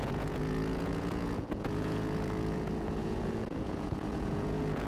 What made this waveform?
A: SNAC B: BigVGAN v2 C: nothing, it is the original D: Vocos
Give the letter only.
D